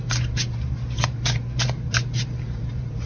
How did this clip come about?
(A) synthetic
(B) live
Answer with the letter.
A